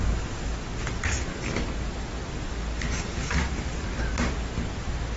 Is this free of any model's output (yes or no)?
yes